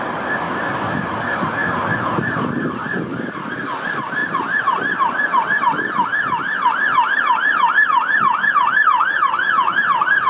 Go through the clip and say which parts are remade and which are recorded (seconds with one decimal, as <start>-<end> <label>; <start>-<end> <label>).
0.0-10.3 recorded